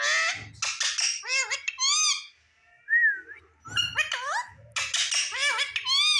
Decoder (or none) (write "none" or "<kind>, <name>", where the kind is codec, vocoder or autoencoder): none